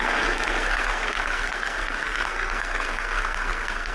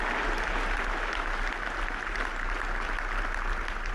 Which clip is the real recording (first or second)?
second